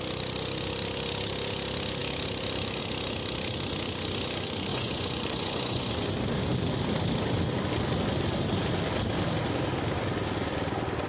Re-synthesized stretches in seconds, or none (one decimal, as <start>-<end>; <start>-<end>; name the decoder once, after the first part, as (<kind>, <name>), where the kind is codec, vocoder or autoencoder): 4.7-5.9 (vocoder, Vocos)